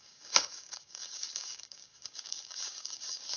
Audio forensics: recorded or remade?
remade